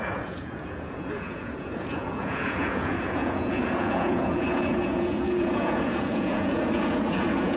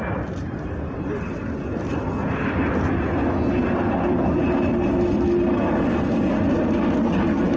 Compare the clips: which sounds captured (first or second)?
second